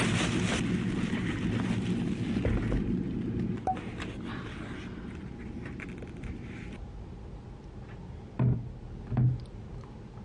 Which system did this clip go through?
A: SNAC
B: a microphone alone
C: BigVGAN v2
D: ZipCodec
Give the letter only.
B